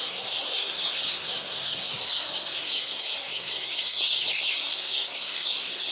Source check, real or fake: fake